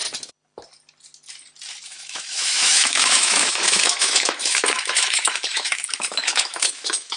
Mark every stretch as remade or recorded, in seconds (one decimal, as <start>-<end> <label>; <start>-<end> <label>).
0.0-1.8 recorded; 1.8-7.2 remade